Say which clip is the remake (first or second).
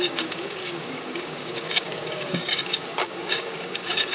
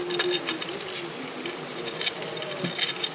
first